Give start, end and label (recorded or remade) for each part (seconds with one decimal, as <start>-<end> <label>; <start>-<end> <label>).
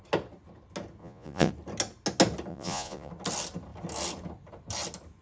0.0-1.0 recorded; 1.0-1.5 remade; 1.5-2.5 recorded; 2.5-3.1 remade; 3.1-5.2 recorded